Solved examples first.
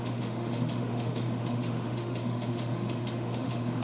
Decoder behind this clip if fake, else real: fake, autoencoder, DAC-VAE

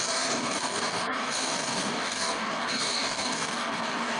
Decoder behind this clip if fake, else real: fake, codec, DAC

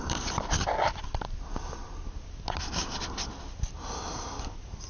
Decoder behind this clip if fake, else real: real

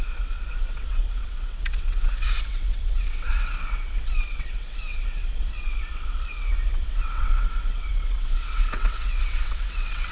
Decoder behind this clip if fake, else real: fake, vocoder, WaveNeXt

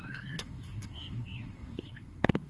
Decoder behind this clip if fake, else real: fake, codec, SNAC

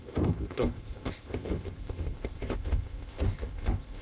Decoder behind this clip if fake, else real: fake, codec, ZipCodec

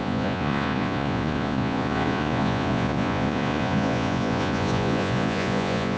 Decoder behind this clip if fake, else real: fake, vocoder, Vocos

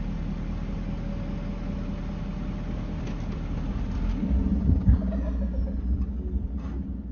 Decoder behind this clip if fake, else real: real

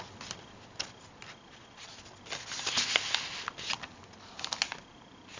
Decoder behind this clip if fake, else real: real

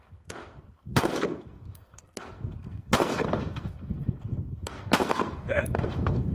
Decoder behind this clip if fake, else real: fake, codec, SNAC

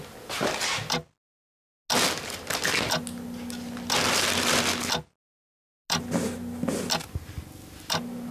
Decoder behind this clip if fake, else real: real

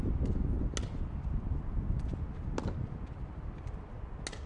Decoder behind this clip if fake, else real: real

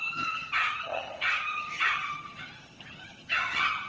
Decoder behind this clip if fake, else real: fake, vocoder, HiFi-GAN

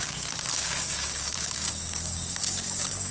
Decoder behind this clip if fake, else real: fake, codec, DAC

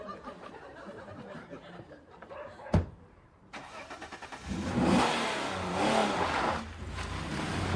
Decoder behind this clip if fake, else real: fake, vocoder, BigVGAN v2